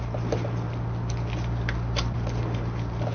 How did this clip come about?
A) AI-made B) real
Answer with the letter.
B